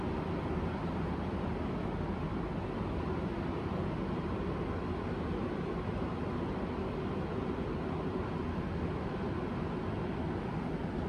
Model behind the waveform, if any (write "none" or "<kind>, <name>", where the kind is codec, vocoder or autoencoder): none